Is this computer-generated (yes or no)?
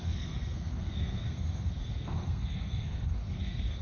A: yes